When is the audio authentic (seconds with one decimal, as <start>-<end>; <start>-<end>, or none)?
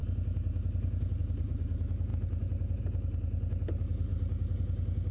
0.0-5.1